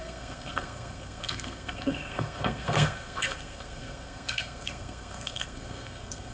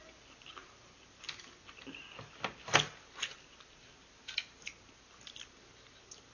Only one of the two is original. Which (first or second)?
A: second